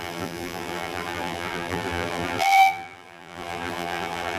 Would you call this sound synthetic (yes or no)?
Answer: yes